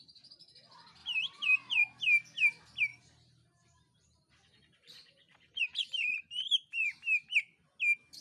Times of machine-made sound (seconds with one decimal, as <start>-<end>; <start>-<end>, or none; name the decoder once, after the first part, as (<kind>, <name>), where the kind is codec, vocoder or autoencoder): 1.0-1.8 (vocoder, BigVGAN v2); 2.9-7.0